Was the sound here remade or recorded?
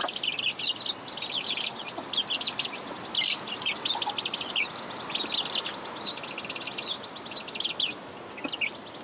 recorded